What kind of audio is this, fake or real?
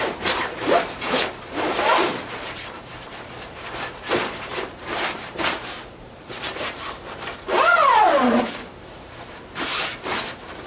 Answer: fake